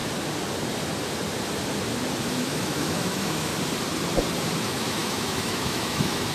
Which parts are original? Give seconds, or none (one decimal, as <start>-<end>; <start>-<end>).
0.0-2.3; 3.5-4.6